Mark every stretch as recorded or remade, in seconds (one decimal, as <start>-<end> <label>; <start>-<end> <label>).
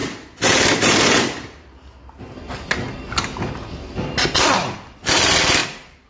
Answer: 0.0-2.7 remade; 2.7-6.1 recorded